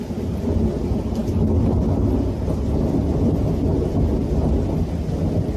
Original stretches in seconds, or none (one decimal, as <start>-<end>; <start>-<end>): 0.0-5.6